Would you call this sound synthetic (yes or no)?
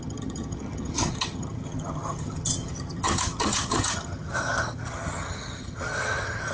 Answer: yes